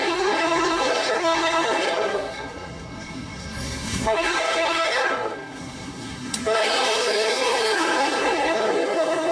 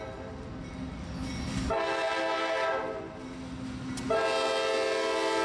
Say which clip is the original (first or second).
second